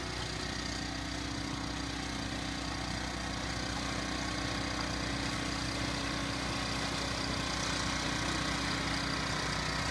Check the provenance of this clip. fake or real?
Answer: real